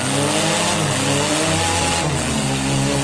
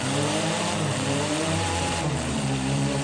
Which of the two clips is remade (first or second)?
second